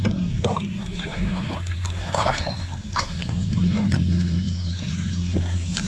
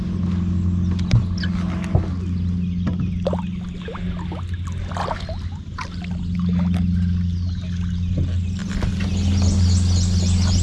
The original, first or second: second